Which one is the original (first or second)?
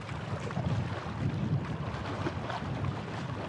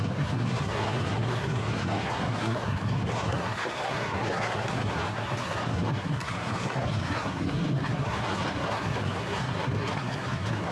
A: first